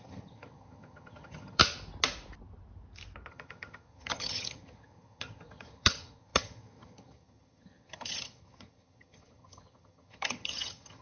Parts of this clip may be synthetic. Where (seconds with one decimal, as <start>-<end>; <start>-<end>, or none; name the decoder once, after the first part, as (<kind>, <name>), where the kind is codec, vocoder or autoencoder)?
0.0-1.6 (vocoder, HiFi-GAN); 3.3-11.0